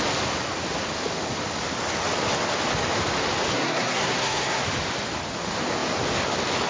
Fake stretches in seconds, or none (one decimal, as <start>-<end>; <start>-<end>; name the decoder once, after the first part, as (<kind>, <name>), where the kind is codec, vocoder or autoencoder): 3.5-4.6 (codec, SNAC)